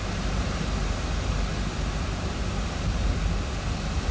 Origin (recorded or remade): recorded